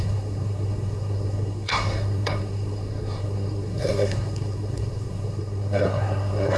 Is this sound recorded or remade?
remade